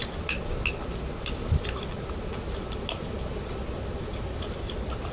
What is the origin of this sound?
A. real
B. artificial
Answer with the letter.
A